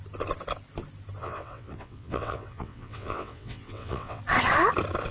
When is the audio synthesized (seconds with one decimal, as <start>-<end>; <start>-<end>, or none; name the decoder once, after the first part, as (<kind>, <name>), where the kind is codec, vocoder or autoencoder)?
1.2-4.2 (vocoder, WaveNeXt)